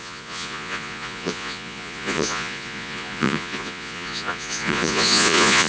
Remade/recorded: remade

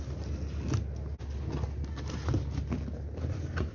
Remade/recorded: recorded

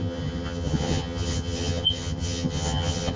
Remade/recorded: remade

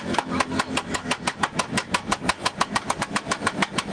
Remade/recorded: remade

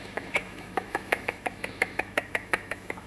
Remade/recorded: remade